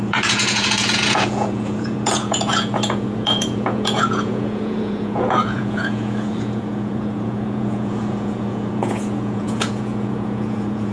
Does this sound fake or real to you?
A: fake